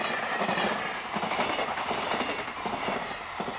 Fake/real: real